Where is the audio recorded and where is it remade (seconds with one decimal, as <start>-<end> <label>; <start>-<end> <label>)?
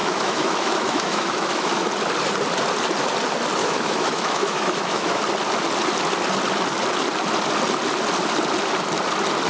0.0-1.9 remade; 1.9-3.6 recorded; 3.6-5.2 remade; 5.2-9.5 recorded